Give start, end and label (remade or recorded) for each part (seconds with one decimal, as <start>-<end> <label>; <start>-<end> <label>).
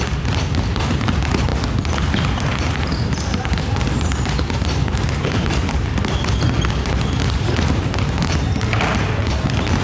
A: 0.0-9.8 recorded